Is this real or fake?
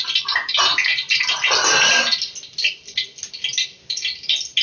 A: real